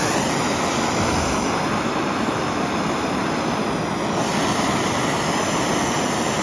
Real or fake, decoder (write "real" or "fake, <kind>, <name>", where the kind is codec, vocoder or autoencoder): real